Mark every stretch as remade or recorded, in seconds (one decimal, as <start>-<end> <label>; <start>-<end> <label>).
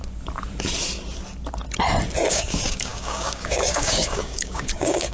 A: 0.0-2.3 recorded; 2.3-5.1 remade